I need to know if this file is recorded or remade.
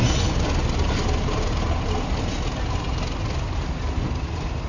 recorded